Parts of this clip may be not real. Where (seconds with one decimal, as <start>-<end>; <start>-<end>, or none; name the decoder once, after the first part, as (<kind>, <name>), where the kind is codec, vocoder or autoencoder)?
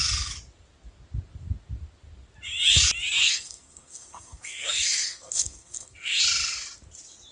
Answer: 3.2-6.2 (codec, SNAC)